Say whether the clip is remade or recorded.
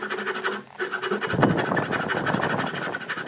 recorded